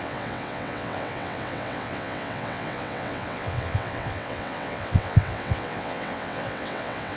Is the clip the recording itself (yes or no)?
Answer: no